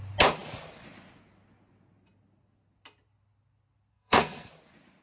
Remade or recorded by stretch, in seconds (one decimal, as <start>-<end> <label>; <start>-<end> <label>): 0.0-3.9 recorded; 3.9-4.5 remade; 4.5-5.0 recorded